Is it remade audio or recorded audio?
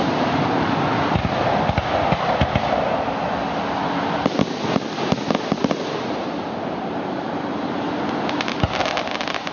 recorded